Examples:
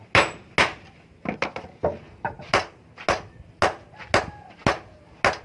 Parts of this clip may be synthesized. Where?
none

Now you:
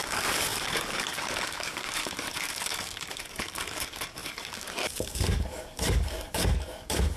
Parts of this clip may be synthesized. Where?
0.0-7.2 (codec, DAC)

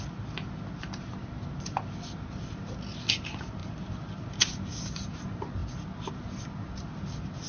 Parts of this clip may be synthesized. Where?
none

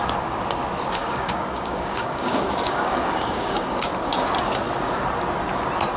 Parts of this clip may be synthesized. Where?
1.0-3.9 (codec, DAC)

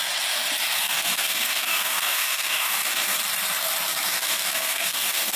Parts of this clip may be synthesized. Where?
0.8-3.2 (codec, DAC); 4.1-5.4